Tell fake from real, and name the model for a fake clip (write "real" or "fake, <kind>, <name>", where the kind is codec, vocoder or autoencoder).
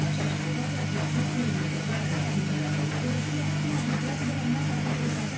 real